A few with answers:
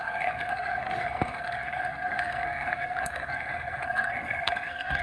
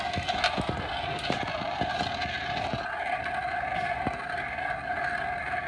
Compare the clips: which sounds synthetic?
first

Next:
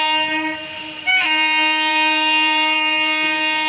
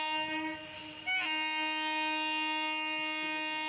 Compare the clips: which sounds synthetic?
first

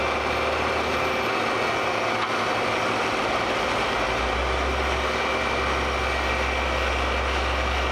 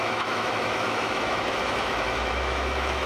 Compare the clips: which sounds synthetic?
second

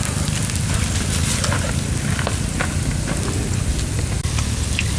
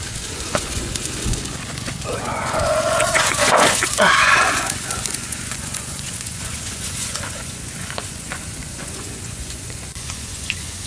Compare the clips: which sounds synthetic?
second